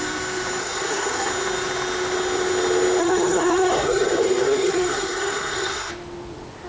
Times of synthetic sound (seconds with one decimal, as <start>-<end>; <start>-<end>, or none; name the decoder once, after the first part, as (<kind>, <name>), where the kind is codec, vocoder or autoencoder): 0.6-1.3 (codec, SNAC); 3.0-5.9